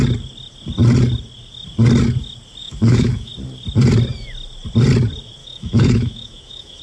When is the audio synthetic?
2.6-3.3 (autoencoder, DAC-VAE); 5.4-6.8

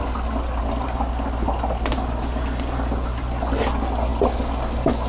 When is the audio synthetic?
none

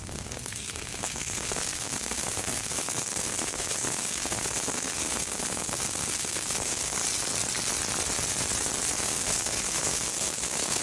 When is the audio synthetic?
0.0-7.0 (codec, SNAC); 9.0-10.8

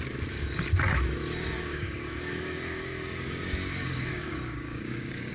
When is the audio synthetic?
1.7-5.3 (codec, DAC)

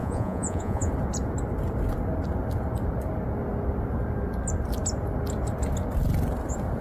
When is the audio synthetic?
0.0-0.9 (vocoder, Vocos)